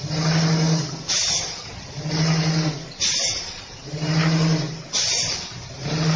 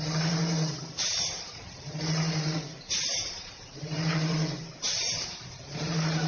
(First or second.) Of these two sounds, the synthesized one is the second